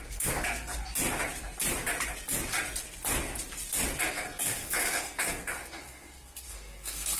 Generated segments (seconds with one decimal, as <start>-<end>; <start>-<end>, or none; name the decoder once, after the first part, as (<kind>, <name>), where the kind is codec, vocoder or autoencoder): 0.0-0.7 (codec, SNAC); 4.1-7.2